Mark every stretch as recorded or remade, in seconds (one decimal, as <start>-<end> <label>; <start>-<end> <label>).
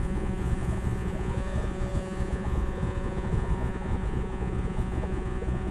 0.0-5.7 remade